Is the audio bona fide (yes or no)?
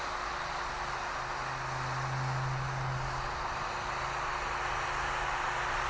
yes